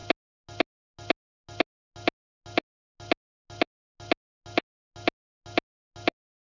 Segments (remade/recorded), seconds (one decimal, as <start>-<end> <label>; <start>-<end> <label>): 0.0-6.4 recorded